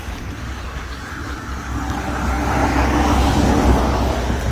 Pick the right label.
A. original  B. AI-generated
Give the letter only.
B